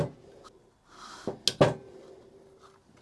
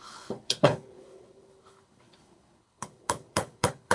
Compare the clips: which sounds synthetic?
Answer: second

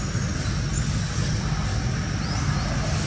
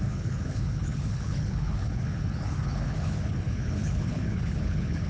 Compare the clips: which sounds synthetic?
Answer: second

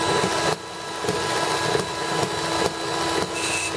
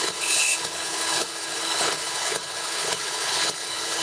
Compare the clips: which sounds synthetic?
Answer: second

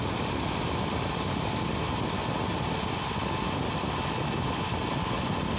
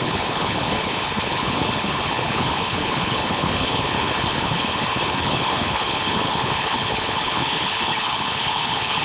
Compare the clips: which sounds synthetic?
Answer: second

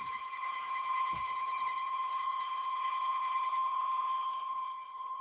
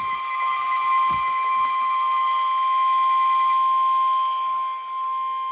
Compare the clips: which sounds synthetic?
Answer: first